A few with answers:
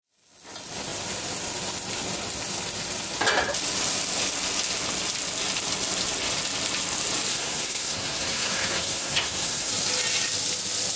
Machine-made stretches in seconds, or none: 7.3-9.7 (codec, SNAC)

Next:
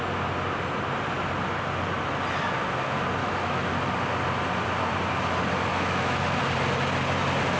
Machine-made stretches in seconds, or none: 3.2-3.7 (autoencoder, DAC-VAE); 5.7-6.4